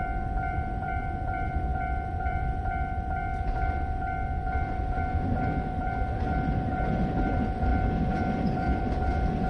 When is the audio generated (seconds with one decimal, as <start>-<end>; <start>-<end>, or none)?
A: 0.0-9.5